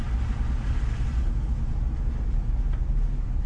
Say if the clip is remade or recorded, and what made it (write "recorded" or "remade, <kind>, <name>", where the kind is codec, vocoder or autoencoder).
recorded